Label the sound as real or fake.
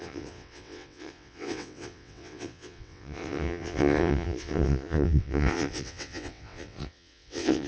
fake